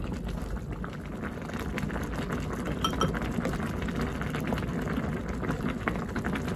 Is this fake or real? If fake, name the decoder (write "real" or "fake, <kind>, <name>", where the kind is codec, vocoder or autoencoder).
real